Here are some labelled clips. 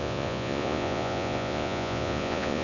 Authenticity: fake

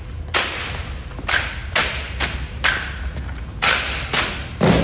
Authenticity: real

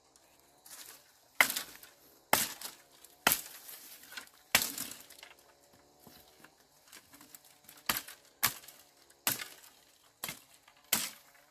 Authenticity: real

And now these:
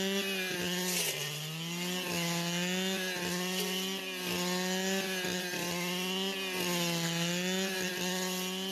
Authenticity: real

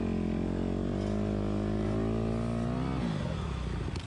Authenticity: real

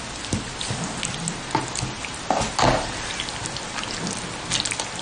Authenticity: real